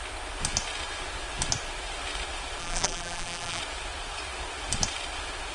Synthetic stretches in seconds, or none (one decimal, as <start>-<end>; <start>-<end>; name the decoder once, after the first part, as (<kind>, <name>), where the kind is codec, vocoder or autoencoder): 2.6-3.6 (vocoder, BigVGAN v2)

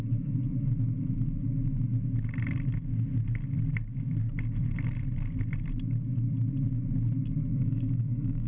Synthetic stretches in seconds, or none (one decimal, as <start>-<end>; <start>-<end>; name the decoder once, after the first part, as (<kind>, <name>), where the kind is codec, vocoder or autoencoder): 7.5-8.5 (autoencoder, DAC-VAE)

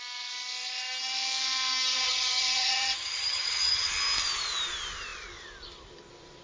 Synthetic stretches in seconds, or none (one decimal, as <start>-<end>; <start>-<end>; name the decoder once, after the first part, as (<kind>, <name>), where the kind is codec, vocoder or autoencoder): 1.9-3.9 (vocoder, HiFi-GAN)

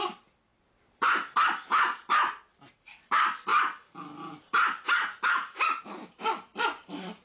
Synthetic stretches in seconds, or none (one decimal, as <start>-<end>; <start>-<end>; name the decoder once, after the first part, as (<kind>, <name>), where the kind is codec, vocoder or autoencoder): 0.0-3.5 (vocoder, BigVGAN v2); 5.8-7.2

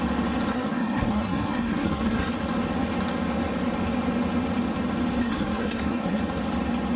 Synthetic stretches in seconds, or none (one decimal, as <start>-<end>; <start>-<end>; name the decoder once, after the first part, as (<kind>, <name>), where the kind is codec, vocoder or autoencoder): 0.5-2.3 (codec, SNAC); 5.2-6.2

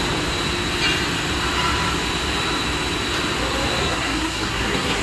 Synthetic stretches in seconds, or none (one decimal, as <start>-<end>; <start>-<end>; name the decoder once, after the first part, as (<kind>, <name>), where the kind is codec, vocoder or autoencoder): 3.8-5.0 (codec, SNAC)

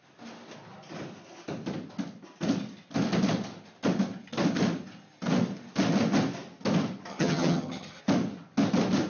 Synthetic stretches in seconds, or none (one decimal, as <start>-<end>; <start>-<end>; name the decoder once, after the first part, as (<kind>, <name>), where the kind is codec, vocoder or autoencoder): 7.1-8.0 (vocoder, HiFi-GAN)

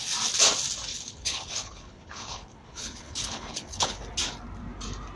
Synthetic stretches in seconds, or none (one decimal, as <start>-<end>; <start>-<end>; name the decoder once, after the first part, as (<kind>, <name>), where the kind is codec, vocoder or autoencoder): 0.9-4.0 (codec, HILCodec)